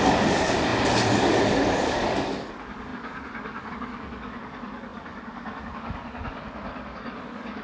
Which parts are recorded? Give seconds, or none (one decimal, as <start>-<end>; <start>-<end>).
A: none